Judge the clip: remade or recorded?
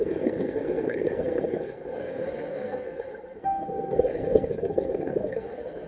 remade